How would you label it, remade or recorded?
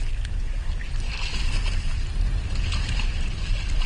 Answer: recorded